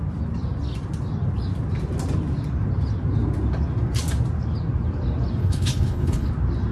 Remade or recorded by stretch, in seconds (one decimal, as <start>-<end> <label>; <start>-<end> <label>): 0.0-5.4 recorded; 5.4-6.3 remade; 6.3-6.7 recorded